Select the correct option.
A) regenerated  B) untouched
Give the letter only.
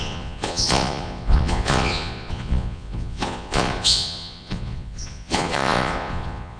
A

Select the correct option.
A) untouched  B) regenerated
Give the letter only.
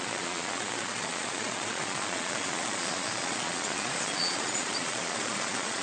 B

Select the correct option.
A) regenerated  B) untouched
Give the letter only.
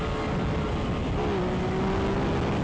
B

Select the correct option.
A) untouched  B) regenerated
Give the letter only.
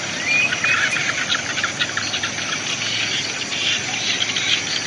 A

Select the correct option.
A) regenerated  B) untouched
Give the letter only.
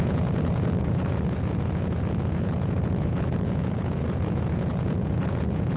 A